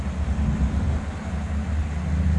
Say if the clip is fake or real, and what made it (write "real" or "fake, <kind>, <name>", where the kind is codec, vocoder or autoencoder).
real